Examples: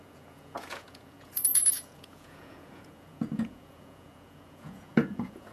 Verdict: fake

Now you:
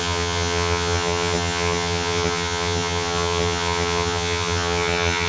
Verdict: fake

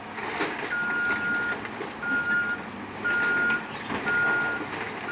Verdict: real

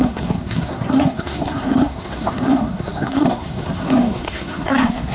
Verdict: fake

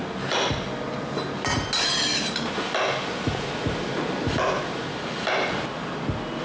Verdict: real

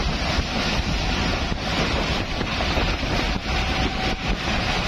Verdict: real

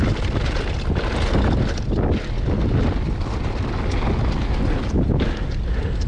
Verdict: real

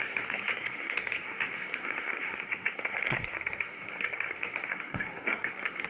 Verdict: fake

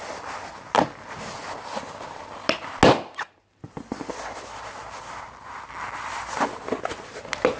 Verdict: real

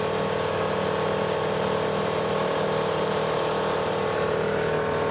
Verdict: real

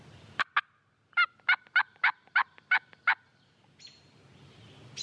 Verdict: real